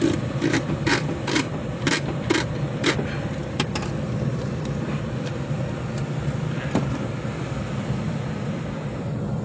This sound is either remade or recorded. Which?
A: remade